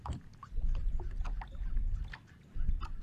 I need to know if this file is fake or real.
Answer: real